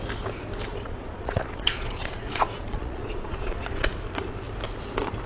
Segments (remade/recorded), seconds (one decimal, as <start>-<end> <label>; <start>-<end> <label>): 0.0-0.7 recorded; 0.7-3.9 remade; 3.9-5.3 recorded

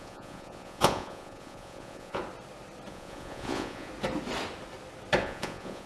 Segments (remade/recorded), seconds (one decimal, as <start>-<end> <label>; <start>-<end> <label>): 0.0-2.2 remade; 2.2-2.9 recorded; 2.9-3.9 remade; 3.9-5.2 recorded; 5.2-5.9 remade

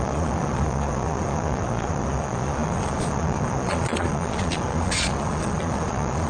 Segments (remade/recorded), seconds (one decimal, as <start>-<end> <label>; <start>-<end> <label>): 0.0-6.3 remade

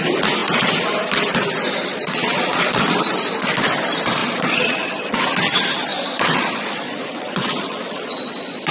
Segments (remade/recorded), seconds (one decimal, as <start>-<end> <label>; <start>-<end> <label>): 0.0-1.9 recorded; 1.9-2.8 remade; 2.8-4.2 recorded; 4.2-5.2 remade; 5.2-5.9 recorded; 5.9-8.7 remade

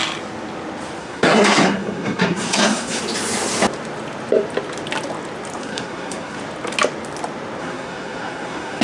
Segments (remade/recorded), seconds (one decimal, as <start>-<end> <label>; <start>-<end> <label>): 0.0-1.0 recorded; 1.0-3.0 remade; 3.0-5.6 recorded; 5.6-6.4 remade; 6.4-7.6 recorded; 7.6-8.8 remade

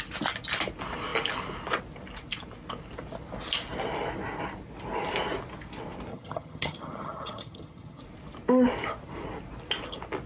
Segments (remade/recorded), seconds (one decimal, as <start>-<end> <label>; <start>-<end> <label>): 0.0-6.1 recorded; 6.1-8.0 remade; 8.0-10.3 recorded

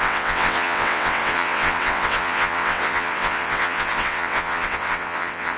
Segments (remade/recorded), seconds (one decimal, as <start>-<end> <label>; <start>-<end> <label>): 0.0-5.6 remade